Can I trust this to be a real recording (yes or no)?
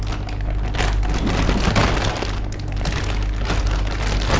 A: yes